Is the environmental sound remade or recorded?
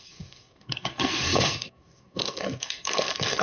remade